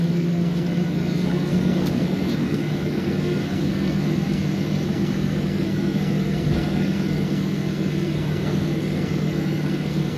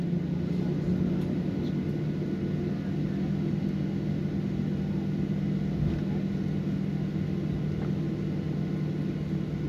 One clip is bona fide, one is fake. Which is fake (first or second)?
first